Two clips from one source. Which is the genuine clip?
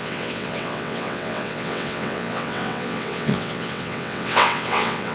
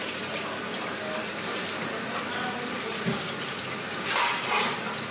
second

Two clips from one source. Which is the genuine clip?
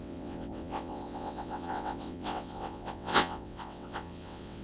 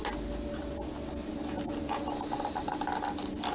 second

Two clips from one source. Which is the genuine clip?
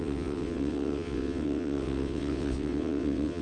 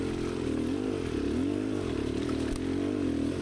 second